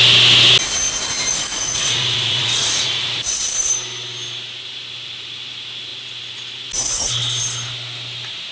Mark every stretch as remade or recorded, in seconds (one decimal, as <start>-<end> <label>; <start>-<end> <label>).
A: 0.0-1.3 recorded; 1.3-3.4 remade; 3.4-8.5 recorded